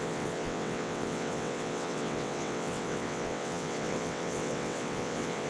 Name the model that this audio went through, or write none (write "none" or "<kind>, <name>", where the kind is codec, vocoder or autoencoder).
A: vocoder, WaveNeXt